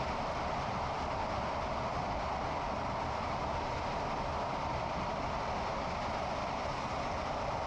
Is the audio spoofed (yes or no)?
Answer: yes